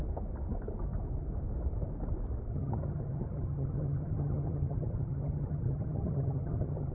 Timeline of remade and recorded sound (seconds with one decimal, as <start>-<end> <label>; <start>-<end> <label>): 0.0-2.5 recorded; 2.5-6.9 remade